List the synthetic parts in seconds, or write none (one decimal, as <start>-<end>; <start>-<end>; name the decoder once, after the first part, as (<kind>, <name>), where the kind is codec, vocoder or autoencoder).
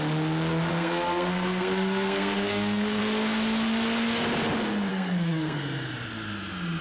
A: 0.7-3.0 (codec, SNAC); 4.9-5.6